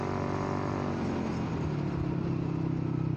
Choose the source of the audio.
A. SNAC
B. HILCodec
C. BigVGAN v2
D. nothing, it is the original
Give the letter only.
D